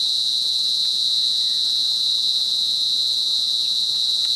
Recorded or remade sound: remade